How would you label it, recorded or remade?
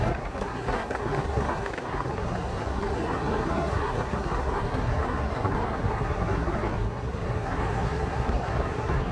remade